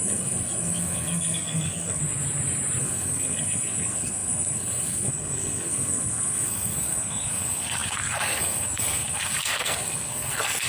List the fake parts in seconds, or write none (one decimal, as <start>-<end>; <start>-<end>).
0.0-2.0; 2.8-10.7